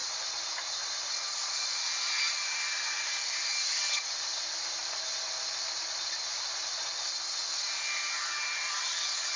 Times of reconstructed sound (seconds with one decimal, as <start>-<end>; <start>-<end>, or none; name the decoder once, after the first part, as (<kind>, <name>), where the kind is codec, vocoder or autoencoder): none